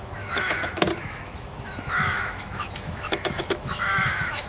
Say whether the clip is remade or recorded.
remade